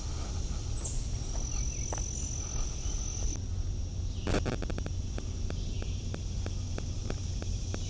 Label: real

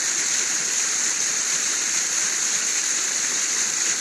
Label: fake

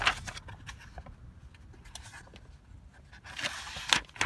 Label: real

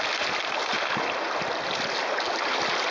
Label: real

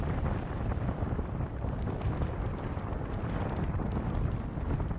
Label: real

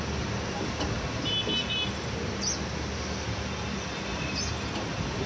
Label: real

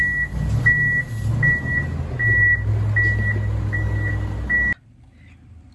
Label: real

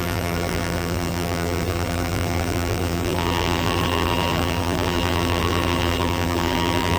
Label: fake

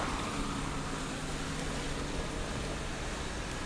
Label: real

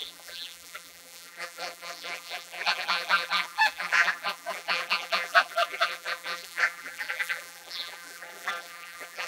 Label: fake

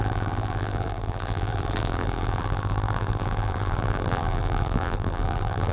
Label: fake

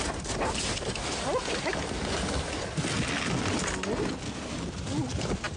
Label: real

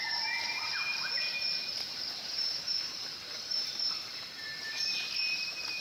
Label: fake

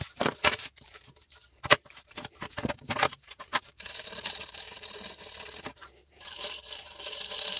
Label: fake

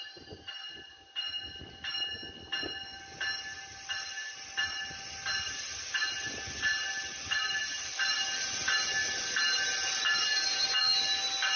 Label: real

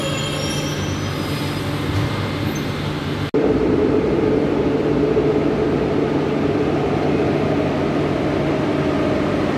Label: real